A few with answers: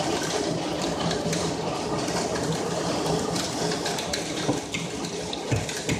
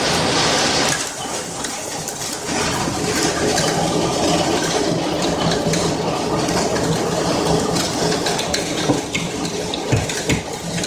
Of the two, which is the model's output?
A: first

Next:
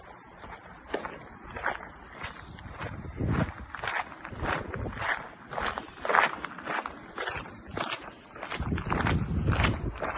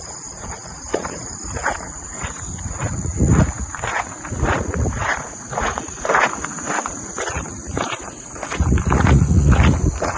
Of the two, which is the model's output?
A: second